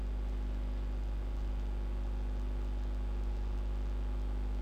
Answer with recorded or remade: recorded